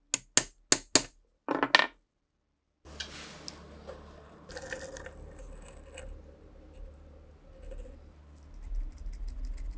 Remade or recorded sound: recorded